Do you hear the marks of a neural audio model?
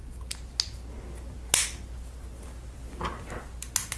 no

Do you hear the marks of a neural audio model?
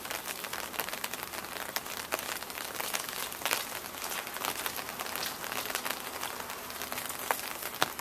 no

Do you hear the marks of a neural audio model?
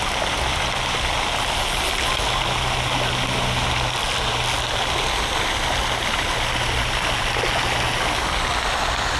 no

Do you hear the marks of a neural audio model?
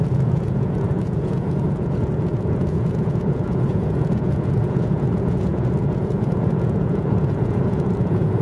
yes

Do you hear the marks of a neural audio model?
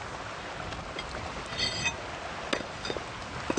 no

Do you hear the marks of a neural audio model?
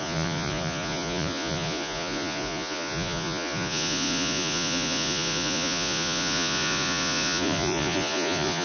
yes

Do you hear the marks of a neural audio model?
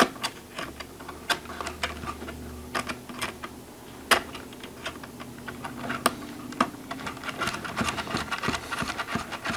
no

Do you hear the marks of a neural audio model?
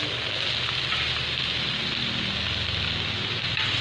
no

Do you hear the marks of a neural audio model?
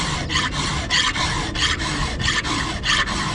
no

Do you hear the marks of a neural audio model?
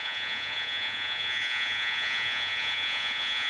yes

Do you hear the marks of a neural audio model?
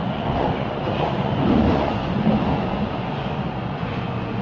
yes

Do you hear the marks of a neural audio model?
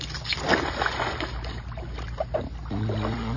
no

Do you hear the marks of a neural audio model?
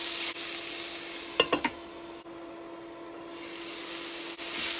no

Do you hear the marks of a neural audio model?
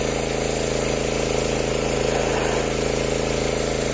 no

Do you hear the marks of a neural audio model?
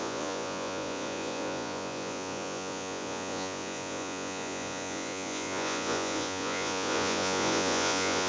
yes